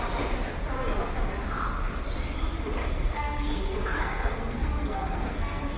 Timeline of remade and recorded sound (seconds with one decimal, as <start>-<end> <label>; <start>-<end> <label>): 0.0-2.8 recorded; 2.8-5.8 remade